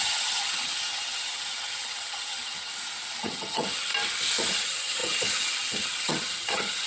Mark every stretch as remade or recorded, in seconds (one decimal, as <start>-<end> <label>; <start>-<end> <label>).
0.0-2.7 remade; 2.7-3.2 recorded; 3.2-3.9 remade; 3.9-4.5 recorded; 4.5-6.9 remade